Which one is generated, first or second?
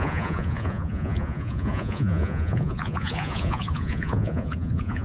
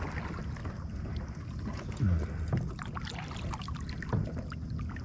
first